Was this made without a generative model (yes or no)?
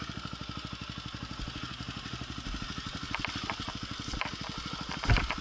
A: yes